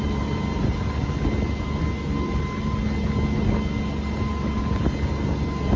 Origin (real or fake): real